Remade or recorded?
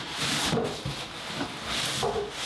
recorded